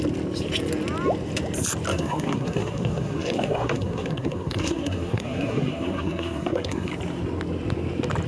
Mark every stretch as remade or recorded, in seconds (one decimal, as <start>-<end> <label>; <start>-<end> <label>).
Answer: 0.0-1.9 recorded; 1.9-6.9 remade; 6.9-8.3 recorded